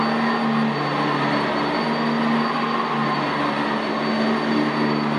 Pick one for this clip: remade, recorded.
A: recorded